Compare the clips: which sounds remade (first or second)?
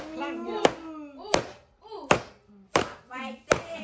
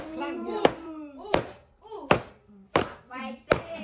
second